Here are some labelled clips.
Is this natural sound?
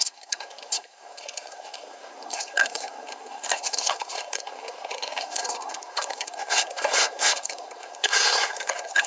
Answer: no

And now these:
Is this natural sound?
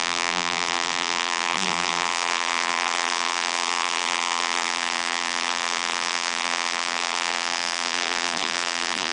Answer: no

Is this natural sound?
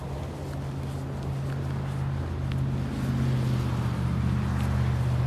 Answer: yes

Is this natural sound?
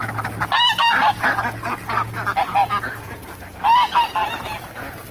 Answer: yes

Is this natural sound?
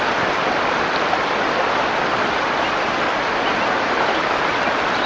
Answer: yes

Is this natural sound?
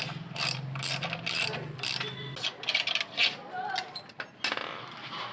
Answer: yes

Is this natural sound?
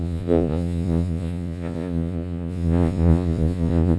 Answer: no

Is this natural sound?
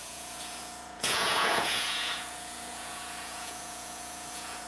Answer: no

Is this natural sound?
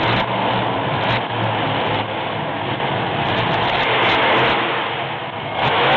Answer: yes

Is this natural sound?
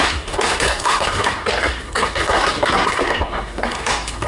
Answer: no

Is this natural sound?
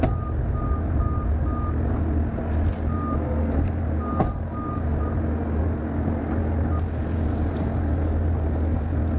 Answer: yes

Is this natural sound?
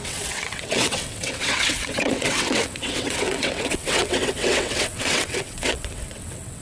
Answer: no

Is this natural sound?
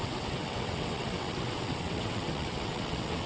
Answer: no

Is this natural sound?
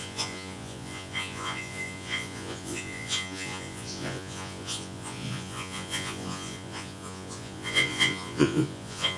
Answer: no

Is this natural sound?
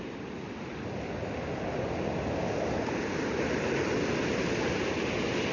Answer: yes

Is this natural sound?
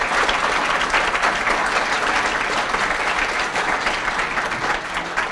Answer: yes